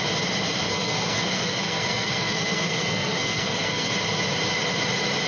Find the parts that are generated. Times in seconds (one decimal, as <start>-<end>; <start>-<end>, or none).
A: 0.7-3.9

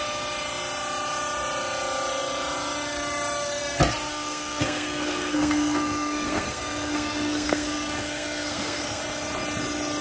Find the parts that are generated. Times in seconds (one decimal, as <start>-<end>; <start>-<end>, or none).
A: 4.1-9.0